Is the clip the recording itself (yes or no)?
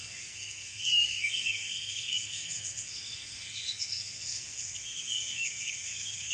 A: no